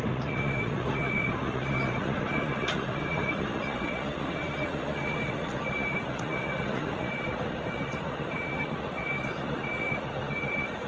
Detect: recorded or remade remade